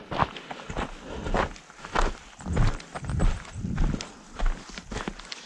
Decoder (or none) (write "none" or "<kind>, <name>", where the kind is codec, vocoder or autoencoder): none